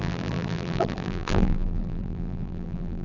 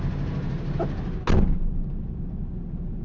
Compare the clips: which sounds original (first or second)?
second